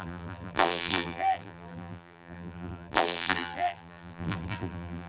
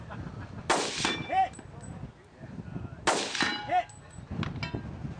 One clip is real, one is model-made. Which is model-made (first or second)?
first